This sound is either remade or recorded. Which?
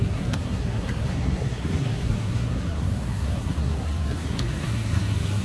remade